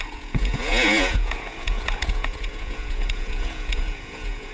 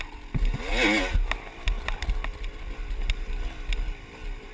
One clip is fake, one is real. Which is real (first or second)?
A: second